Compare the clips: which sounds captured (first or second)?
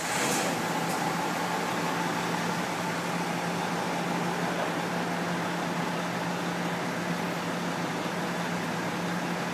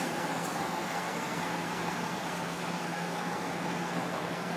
first